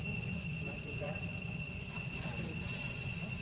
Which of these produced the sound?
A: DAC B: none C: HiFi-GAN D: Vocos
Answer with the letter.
D